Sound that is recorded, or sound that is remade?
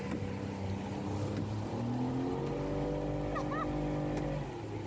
recorded